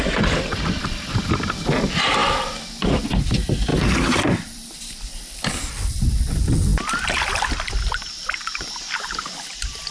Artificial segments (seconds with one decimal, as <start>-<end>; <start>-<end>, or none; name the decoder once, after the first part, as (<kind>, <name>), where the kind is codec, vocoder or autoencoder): 0.0-2.2 (vocoder, BigVGAN v2); 3.2-9.9